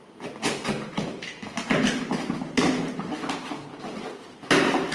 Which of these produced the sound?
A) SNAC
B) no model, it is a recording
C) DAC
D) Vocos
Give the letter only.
B